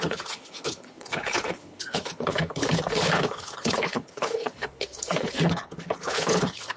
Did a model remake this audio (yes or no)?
yes